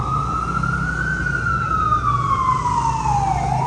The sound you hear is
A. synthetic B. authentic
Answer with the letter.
B